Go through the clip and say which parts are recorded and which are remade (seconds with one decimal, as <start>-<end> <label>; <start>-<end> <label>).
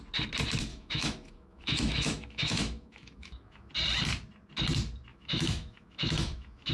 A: 0.0-0.7 recorded; 0.7-3.7 remade; 3.7-5.1 recorded; 5.1-6.7 remade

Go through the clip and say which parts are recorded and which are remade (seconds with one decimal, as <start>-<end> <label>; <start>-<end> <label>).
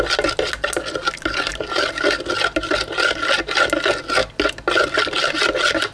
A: 0.0-5.9 recorded